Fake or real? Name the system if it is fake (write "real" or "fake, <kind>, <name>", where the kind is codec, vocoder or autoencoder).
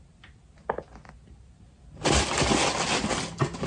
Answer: real